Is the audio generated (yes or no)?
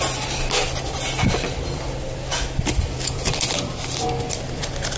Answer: no